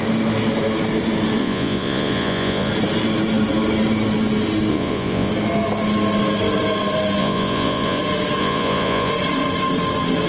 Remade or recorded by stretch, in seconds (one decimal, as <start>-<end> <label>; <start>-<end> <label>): 0.0-1.4 recorded; 1.4-2.7 remade; 2.7-4.7 recorded; 4.7-5.3 remade; 5.3-7.2 recorded; 7.2-8.0 remade; 8.0-8.4 recorded; 8.4-9.1 remade; 9.1-10.3 recorded